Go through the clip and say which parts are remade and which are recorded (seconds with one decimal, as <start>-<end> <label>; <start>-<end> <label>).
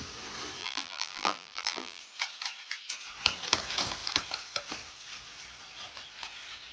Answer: 0.0-0.6 recorded; 0.6-2.0 remade; 2.0-6.7 recorded